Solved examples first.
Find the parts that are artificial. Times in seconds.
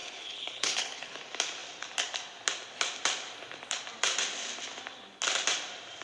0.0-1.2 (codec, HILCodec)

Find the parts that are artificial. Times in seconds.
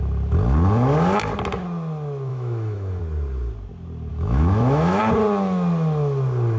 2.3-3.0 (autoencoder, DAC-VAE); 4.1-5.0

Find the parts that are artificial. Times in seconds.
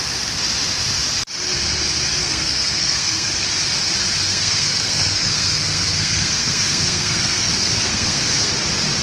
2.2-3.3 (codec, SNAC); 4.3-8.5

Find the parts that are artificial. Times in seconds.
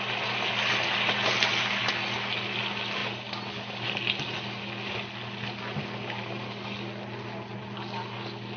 none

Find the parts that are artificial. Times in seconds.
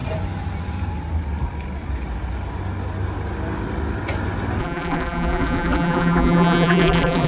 4.6-7.3 (vocoder, BigVGAN v2)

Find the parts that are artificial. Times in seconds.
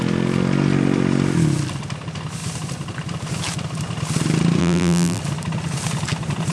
4.6-5.2 (vocoder, BigVGAN v2)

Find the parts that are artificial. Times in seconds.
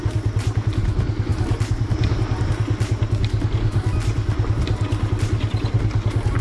none